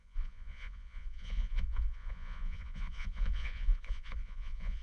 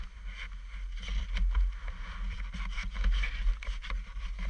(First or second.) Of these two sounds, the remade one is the first